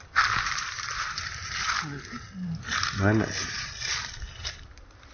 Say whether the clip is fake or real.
real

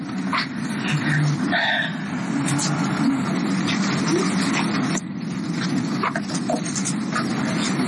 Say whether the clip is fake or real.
real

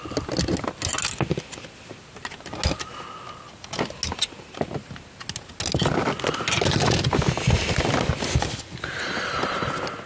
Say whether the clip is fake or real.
real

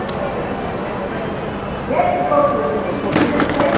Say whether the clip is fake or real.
real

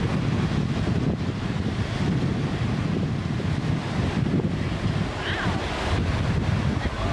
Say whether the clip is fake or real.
real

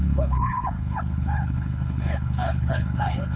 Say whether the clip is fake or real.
fake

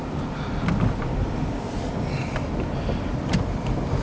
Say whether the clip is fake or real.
real